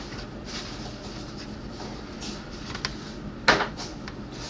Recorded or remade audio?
recorded